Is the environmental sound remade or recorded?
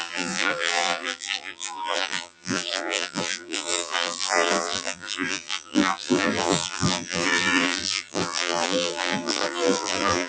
remade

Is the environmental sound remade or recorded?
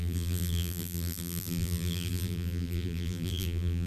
remade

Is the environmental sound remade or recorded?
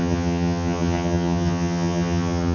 remade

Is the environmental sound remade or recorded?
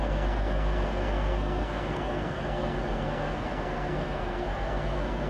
remade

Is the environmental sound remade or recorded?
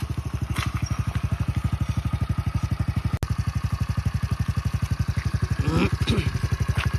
recorded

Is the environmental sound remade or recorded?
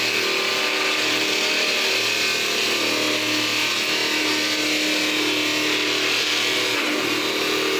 recorded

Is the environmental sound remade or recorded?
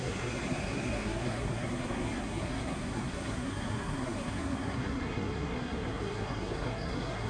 remade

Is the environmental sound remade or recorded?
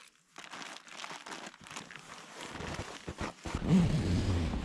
recorded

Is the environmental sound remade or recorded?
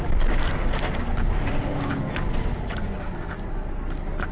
recorded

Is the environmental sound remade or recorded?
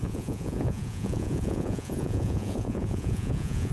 remade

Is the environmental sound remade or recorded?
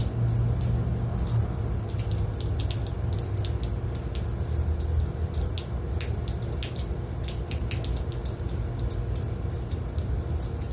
recorded